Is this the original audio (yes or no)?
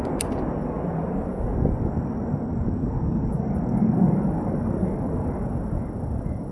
yes